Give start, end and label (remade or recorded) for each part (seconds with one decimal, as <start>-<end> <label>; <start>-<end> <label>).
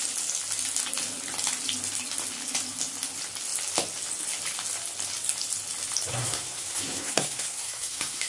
0.0-6.1 recorded; 6.1-8.3 remade